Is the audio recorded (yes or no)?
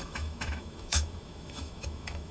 no